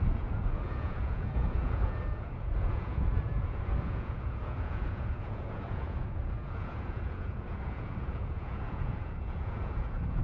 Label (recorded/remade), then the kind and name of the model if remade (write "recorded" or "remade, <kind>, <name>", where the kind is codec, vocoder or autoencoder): remade, vocoder, Vocos